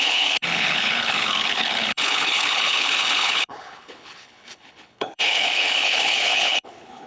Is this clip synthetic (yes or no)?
yes